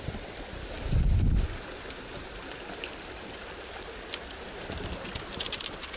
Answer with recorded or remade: recorded